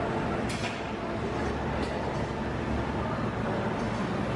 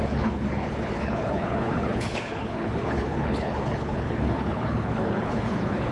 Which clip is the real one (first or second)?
first